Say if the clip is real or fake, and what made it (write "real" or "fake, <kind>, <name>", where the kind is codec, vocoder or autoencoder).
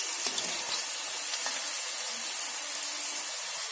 real